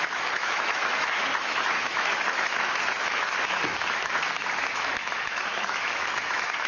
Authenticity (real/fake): fake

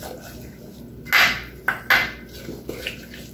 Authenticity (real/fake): real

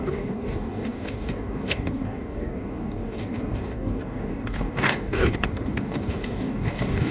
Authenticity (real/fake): fake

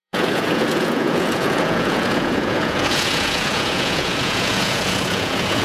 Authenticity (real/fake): fake